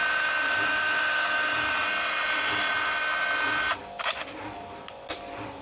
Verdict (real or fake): real